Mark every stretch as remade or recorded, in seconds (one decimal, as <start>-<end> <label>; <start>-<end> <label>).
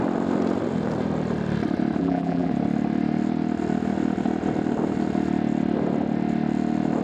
0.0-2.0 recorded; 2.0-2.5 remade; 2.5-7.0 recorded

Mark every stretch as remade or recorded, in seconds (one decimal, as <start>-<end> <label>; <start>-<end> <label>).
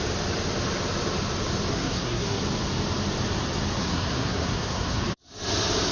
0.0-1.7 recorded; 1.7-2.4 remade; 2.4-3.8 recorded; 3.8-5.0 remade; 5.0-5.9 recorded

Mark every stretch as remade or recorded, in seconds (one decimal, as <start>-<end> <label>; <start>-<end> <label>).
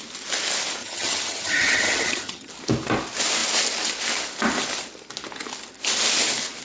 0.0-0.8 recorded; 0.8-2.5 remade; 2.5-6.6 recorded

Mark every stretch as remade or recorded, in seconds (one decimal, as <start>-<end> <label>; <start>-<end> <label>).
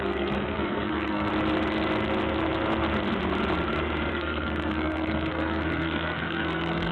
0.0-1.3 remade; 1.3-4.1 recorded; 4.1-6.9 remade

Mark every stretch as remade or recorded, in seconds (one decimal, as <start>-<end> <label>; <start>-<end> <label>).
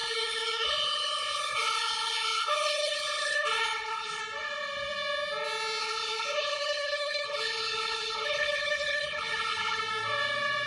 0.0-4.2 remade; 4.2-5.8 recorded; 5.8-9.8 remade; 9.8-10.7 recorded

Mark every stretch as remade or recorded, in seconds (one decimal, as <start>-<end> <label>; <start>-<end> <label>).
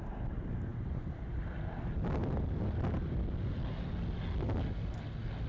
0.0-2.2 recorded; 2.2-3.5 remade; 3.5-5.5 recorded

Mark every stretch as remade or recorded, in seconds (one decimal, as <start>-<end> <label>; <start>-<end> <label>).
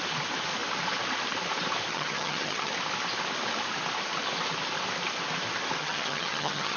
0.0-1.9 recorded; 1.9-2.7 remade; 2.7-5.8 recorded; 5.8-6.8 remade